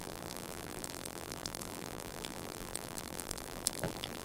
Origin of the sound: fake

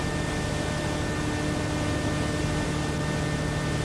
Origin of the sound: real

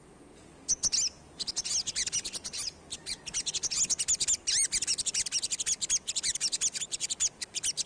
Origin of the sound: real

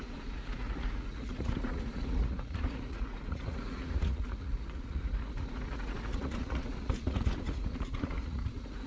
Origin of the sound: fake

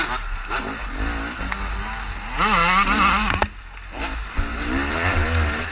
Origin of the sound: real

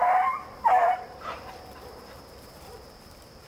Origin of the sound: fake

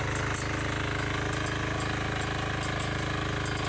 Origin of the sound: real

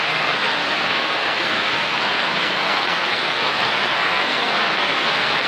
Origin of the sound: fake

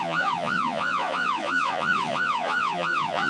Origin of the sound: fake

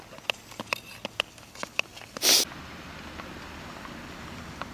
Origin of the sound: real